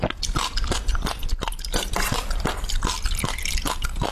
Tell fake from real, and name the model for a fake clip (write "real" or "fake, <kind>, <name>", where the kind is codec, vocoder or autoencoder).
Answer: real